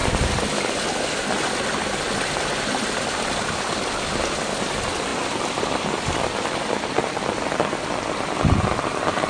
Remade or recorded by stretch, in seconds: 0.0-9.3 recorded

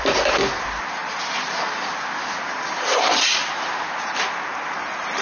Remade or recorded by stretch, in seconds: 0.0-1.0 remade; 1.0-2.9 recorded; 2.9-5.2 remade

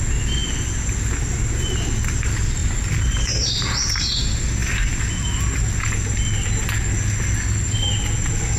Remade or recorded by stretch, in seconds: 0.0-2.6 recorded; 2.6-3.5 remade; 3.5-8.6 recorded

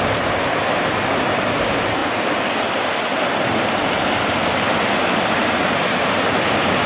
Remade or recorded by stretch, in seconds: 0.0-6.9 recorded

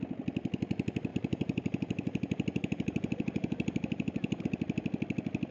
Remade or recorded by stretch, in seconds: 0.0-1.1 recorded; 1.1-4.4 remade; 4.4-5.5 recorded